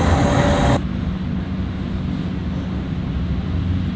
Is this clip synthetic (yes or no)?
no